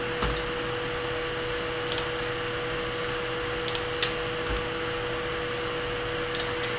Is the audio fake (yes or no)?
no